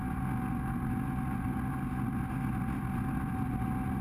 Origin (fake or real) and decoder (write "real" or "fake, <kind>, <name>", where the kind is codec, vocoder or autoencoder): real